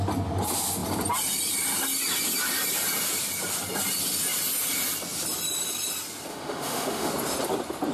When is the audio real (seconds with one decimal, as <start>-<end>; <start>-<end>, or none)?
0.0-6.3; 7.1-7.9